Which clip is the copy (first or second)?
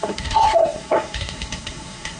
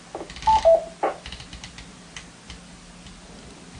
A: first